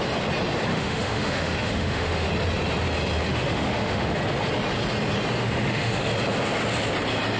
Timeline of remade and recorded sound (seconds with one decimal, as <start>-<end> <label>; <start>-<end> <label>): 0.0-0.7 recorded; 0.7-2.3 remade; 2.3-3.3 recorded; 3.3-4.2 remade; 4.2-5.4 recorded; 5.4-6.1 remade; 6.1-7.4 recorded